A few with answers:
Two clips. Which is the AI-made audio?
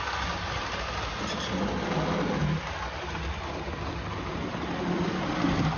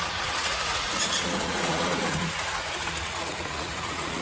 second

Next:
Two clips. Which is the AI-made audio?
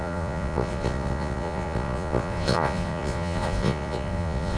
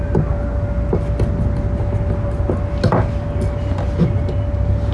first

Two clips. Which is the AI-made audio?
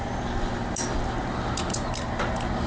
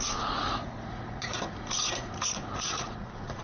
second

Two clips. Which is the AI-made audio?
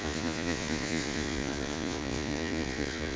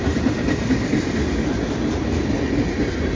first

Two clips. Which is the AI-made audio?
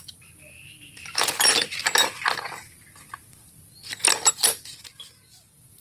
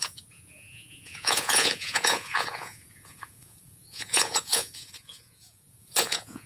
second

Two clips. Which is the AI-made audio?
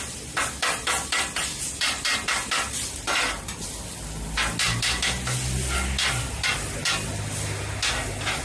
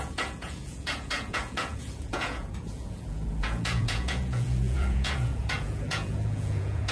second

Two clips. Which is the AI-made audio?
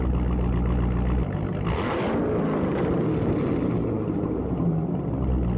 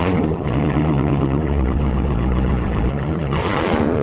second